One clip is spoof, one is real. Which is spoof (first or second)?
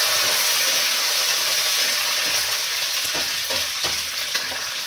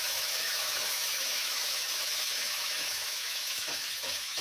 second